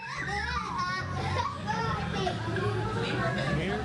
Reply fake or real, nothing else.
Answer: real